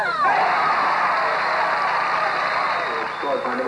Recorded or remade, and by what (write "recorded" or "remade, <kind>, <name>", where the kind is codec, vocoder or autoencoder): recorded